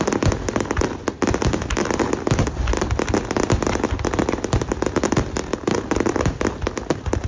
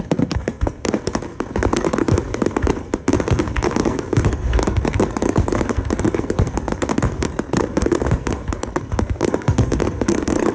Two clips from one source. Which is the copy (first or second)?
second